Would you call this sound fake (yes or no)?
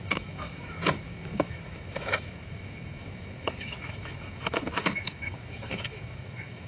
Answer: yes